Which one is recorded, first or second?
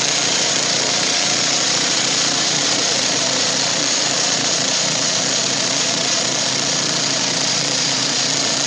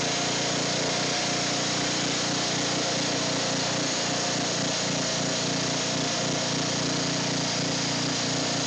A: second